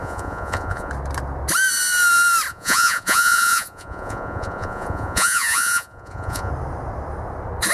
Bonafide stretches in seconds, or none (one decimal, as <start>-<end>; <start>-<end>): 0.9-2.5; 6.5-7.7